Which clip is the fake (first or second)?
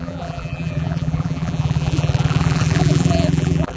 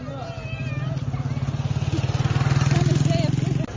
first